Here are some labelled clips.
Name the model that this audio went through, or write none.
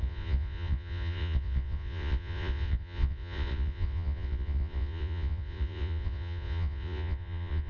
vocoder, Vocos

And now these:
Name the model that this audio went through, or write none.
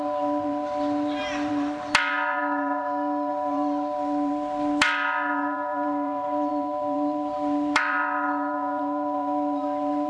vocoder, BigVGAN v2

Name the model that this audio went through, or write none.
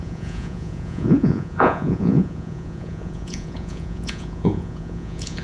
vocoder, Vocos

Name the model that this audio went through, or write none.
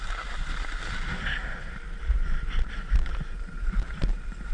vocoder, BigVGAN v2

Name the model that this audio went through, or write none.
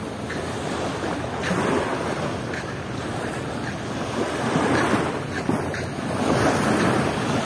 none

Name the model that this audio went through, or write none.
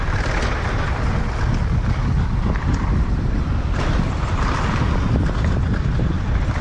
none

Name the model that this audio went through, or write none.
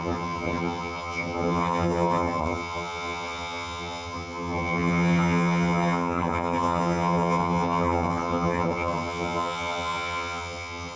vocoder, HiFi-GAN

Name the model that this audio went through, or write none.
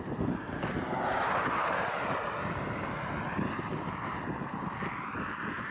none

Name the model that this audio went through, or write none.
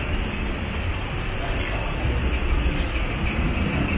none